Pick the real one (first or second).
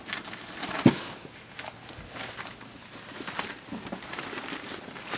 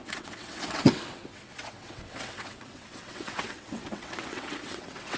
first